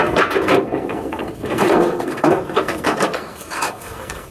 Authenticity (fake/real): fake